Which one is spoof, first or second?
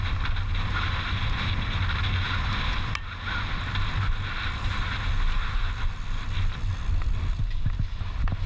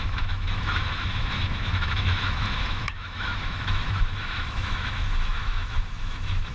second